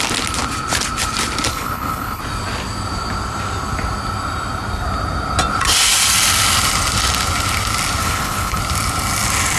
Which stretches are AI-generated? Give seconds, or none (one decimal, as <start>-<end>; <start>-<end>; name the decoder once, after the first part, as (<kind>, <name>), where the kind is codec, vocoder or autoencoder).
1.5-2.2 (codec, HILCodec); 8.0-8.6